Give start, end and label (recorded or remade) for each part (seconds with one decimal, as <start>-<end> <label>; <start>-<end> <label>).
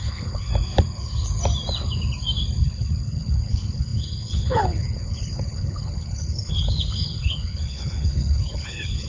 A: 0.0-0.5 remade; 0.5-2.6 recorded; 2.6-9.1 remade